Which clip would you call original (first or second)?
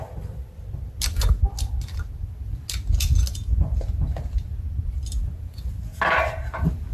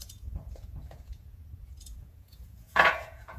first